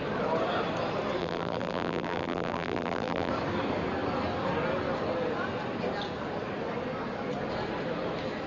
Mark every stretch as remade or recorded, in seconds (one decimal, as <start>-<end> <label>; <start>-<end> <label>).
0.0-1.2 recorded; 1.2-3.3 remade; 3.3-8.5 recorded